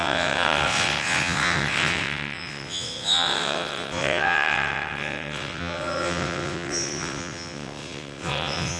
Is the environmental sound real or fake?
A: fake